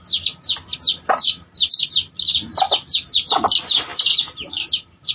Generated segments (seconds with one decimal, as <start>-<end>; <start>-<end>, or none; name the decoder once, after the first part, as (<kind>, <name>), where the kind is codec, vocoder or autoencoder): 3.9-5.1 (vocoder, BigVGAN v2)